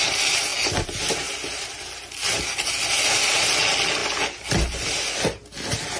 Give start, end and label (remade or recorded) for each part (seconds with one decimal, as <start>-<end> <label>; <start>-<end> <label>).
0.0-6.0 recorded